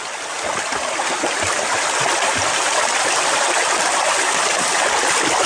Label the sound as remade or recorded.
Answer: recorded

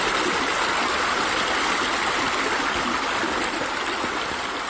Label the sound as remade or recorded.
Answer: recorded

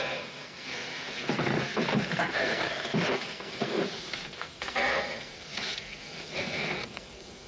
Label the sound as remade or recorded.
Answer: remade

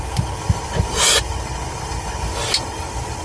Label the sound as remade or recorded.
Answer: recorded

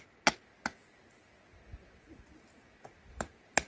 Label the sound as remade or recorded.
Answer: recorded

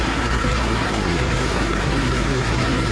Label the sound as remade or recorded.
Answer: remade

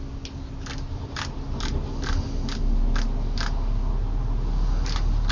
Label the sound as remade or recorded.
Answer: recorded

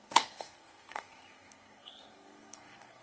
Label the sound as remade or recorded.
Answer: remade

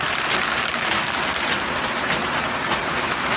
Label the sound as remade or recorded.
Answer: recorded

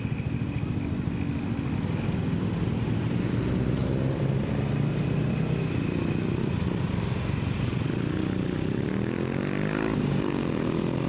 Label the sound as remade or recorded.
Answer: recorded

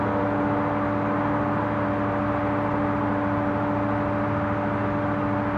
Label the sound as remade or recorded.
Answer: recorded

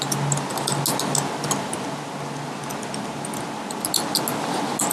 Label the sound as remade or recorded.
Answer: recorded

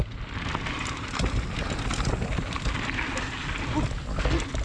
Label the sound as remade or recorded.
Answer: recorded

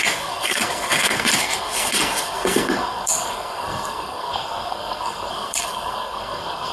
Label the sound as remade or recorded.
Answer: remade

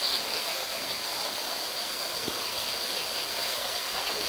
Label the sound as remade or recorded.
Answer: remade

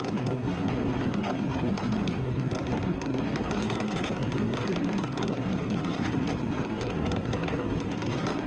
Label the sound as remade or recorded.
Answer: remade